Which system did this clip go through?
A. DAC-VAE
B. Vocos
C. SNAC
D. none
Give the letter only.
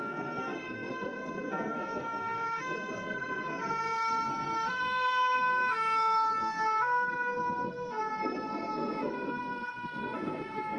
C